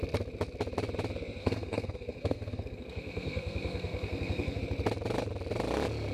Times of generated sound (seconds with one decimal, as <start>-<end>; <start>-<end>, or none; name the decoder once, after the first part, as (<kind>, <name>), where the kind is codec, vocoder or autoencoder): 1.4-4.6 (codec, SNAC)